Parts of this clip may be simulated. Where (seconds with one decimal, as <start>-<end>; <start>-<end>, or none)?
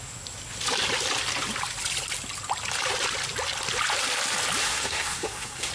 4.6-5.7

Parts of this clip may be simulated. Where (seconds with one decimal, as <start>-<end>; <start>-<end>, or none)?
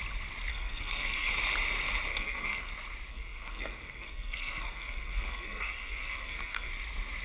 0.5-1.3; 2.1-2.7; 3.1-6.7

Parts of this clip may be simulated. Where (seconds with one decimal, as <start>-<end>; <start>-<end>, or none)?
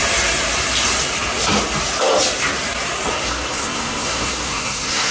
3.1-5.1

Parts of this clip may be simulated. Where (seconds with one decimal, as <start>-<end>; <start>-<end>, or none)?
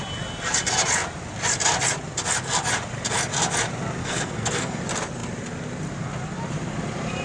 4.0-4.8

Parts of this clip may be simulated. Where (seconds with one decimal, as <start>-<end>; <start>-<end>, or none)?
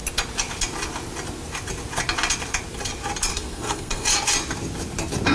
3.3-4.1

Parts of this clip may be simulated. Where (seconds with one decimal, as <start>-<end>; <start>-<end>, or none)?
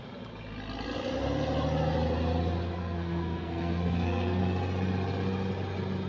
2.8-4.4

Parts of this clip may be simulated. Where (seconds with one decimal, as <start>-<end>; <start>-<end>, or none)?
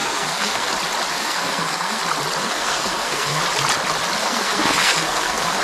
0.0-0.7; 1.1-2.0; 2.4-3.4; 4.2-5.6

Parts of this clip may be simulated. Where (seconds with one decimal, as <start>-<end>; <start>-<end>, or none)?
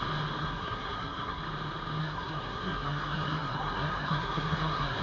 0.4-1.4; 2.0-5.0